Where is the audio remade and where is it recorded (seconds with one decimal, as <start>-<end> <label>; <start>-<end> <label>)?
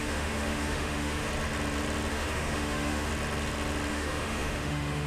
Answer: 0.0-1.3 remade; 1.3-2.1 recorded; 2.1-3.1 remade; 3.1-3.9 recorded; 3.9-5.1 remade